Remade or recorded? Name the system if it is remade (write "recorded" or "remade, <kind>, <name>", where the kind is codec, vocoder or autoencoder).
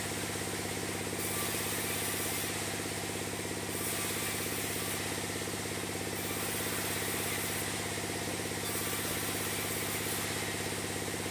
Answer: recorded